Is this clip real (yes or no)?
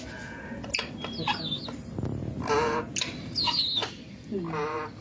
yes